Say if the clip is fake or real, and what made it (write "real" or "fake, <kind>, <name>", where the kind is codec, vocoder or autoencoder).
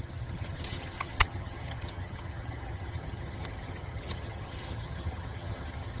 fake, vocoder, HiFi-GAN